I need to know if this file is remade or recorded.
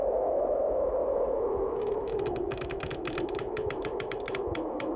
remade